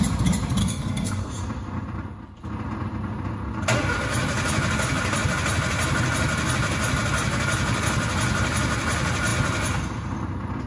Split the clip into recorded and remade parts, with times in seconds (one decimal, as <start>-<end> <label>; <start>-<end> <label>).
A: 0.0-0.6 recorded; 0.6-1.3 remade; 1.3-10.7 recorded